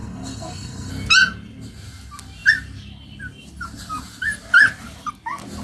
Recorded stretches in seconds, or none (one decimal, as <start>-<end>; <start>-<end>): 0.9-5.6